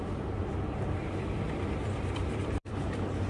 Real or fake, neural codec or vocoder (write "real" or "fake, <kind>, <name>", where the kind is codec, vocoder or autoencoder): fake, vocoder, BigVGAN v2